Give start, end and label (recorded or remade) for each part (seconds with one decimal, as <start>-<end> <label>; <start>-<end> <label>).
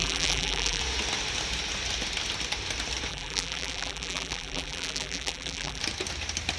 0.0-0.8 remade; 0.8-3.1 recorded; 3.1-5.8 remade; 5.8-6.6 recorded